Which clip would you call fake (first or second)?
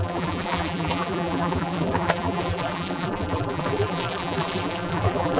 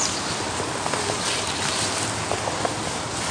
first